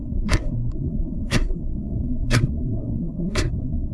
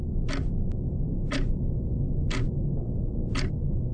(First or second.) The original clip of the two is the second